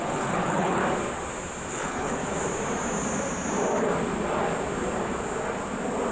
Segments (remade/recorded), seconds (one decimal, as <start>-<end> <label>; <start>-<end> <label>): 0.0-0.8 remade; 0.8-1.7 recorded; 1.7-2.2 remade; 2.2-6.1 recorded